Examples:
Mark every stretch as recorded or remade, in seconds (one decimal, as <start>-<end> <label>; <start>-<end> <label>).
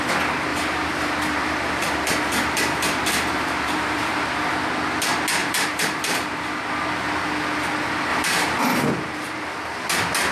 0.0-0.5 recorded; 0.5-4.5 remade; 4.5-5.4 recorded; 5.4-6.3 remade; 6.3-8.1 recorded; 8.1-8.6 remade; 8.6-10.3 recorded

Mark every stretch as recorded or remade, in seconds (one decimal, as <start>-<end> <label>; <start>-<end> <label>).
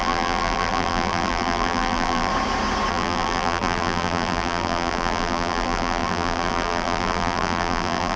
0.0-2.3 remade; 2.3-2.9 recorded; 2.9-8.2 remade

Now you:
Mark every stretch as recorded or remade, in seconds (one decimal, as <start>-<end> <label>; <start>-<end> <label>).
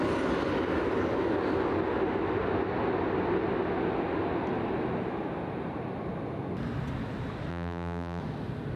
0.0-7.5 recorded; 7.5-8.2 remade; 8.2-8.8 recorded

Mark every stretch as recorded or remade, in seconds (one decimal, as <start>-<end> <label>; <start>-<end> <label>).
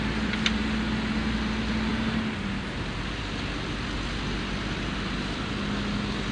0.0-6.3 recorded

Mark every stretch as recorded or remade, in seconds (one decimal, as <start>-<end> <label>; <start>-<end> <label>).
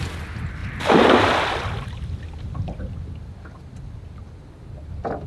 0.0-0.6 recorded; 0.6-2.8 remade; 2.8-5.3 recorded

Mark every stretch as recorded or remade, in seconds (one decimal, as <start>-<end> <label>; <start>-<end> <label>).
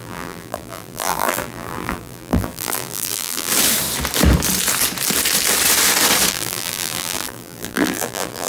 0.0-3.5 remade; 3.5-6.3 recorded; 6.3-8.5 remade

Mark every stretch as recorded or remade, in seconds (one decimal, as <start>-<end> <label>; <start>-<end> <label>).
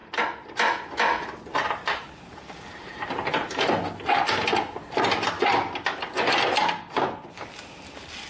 0.0-1.5 remade; 1.5-8.3 recorded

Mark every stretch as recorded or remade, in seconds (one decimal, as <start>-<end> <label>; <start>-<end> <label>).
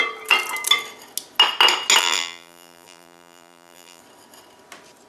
0.0-2.0 recorded; 2.0-4.0 remade; 4.0-5.1 recorded